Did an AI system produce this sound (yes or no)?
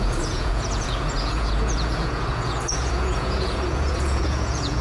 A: yes